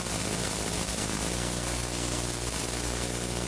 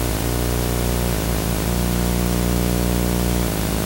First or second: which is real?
second